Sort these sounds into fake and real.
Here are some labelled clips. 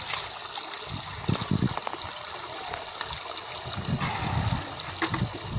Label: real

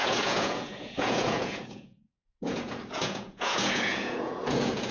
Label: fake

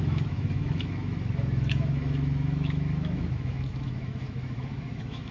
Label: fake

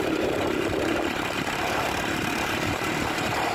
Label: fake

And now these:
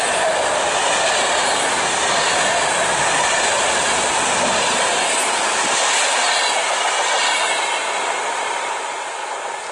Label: real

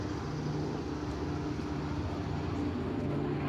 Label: real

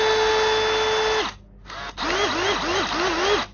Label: real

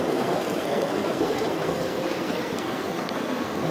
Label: fake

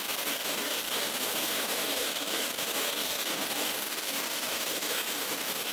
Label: fake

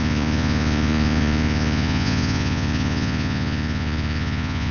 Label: fake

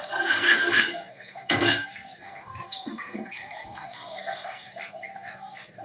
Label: fake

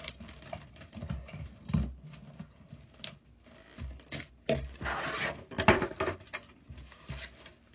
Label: real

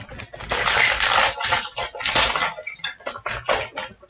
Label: real